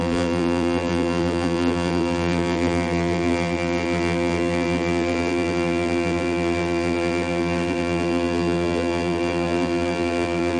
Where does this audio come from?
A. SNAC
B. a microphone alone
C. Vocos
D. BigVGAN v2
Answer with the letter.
D